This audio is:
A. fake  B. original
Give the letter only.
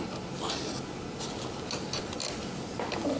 B